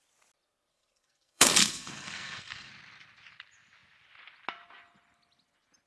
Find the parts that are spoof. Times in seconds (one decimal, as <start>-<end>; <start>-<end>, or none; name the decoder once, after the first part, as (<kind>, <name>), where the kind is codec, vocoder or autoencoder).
0.7-2.7 (codec, SNAC)

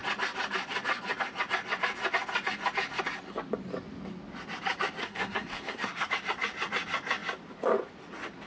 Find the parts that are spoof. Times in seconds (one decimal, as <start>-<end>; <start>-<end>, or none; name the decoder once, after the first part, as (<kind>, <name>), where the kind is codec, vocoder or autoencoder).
5.0-6.1 (codec, SNAC)

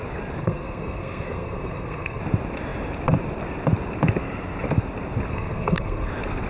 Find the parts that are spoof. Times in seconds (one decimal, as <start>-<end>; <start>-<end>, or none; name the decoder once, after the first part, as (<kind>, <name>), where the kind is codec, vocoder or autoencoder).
0.4-2.2 (codec, SNAC); 5.3-6.1

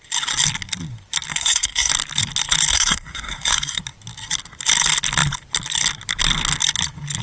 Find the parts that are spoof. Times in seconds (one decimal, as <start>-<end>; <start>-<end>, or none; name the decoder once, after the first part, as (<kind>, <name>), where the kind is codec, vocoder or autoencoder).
1.3-1.9 (codec, SNAC); 2.7-3.8

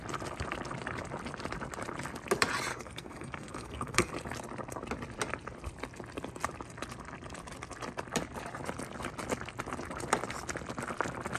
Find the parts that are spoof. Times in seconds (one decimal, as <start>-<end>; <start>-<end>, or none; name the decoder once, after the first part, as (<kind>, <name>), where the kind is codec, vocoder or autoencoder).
2.7-4.1 (codec, SNAC)

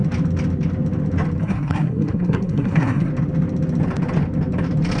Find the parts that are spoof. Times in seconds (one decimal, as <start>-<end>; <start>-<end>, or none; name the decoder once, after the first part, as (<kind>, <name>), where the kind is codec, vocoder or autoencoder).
1.4-3.1 (codec, SNAC)